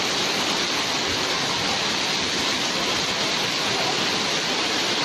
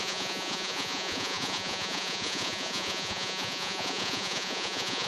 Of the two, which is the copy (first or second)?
second